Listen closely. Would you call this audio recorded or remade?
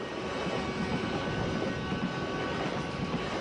recorded